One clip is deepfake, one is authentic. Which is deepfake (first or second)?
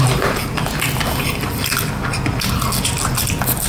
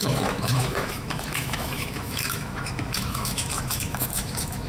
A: second